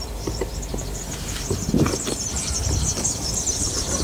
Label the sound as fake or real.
fake